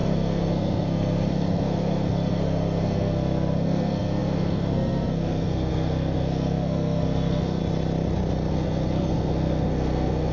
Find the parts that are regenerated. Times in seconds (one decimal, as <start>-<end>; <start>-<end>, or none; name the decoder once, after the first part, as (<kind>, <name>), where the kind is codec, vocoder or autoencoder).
0.0-7.6 (codec, SNAC); 8.5-10.3